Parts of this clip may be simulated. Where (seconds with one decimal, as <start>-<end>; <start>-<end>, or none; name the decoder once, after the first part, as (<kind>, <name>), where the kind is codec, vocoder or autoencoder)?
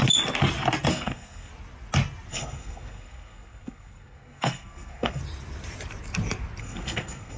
0.9-1.5 (codec, SNAC); 2.3-5.2; 6.6-7.4